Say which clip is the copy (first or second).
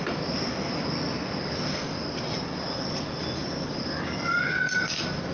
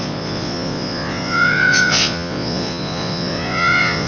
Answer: second